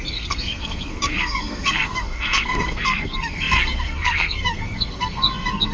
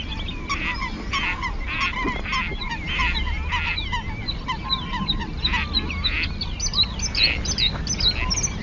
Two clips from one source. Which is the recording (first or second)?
second